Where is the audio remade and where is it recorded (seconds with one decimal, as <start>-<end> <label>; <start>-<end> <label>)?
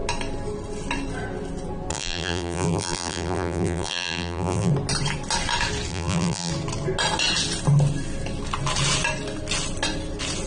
0.0-1.9 recorded; 1.9-4.7 remade; 4.7-5.9 recorded; 5.9-6.5 remade; 6.5-10.5 recorded